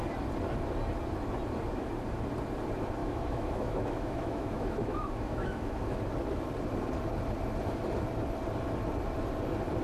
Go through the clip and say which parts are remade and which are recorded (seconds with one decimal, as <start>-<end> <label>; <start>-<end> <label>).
0.0-3.0 recorded; 3.0-6.0 remade; 6.0-9.8 recorded